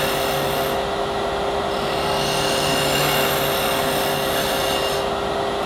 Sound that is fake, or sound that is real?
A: real